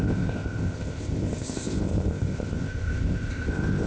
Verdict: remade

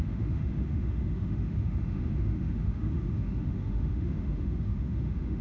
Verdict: remade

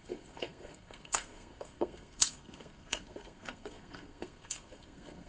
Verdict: remade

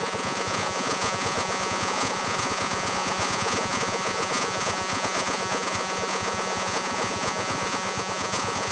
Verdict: remade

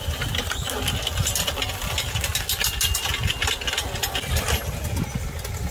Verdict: recorded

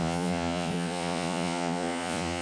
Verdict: remade